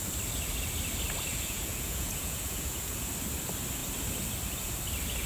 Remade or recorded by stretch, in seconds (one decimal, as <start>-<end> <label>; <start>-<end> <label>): 0.0-1.3 recorded; 1.3-3.1 remade; 3.1-5.3 recorded